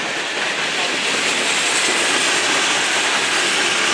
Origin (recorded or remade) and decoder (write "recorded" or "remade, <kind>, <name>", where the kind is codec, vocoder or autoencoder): recorded